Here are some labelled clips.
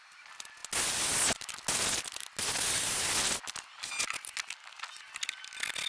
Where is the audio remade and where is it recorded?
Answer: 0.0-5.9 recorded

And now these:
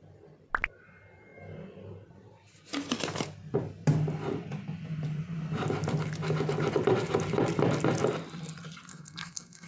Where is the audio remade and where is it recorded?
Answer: 0.0-8.9 recorded; 8.9-9.7 remade

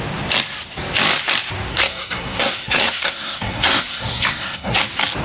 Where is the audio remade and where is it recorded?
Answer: 0.0-1.7 recorded; 1.7-4.8 remade; 4.8-5.2 recorded

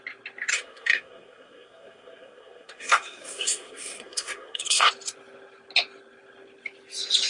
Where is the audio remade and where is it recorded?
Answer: 0.0-0.5 recorded; 0.5-4.9 remade; 4.9-7.3 recorded

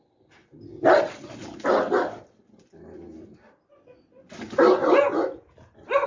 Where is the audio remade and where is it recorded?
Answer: 0.0-6.1 recorded

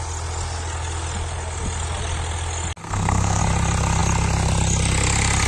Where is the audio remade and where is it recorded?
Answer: 0.0-2.8 recorded; 2.8-3.4 remade; 3.4-5.5 recorded